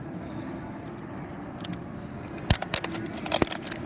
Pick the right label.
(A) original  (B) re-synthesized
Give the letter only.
A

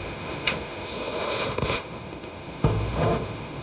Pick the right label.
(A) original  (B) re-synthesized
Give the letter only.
B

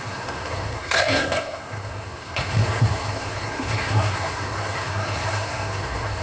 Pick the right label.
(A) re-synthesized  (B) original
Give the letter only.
A